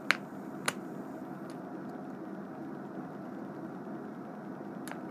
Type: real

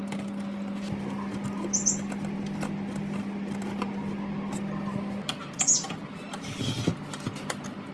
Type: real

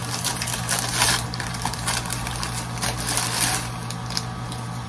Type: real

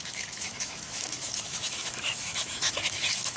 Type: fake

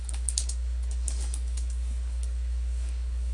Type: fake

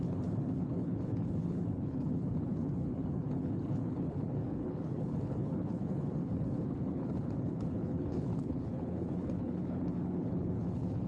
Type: fake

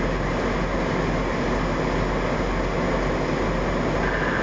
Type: real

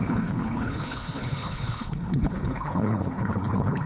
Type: fake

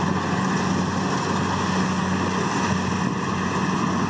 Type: real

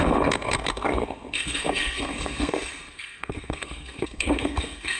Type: fake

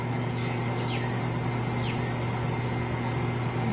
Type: real